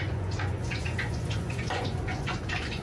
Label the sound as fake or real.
fake